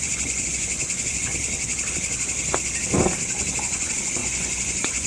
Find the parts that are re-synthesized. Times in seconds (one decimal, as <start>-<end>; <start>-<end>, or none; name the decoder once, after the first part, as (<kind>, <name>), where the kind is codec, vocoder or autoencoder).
0.0-1.3 (vocoder, Vocos); 3.6-5.1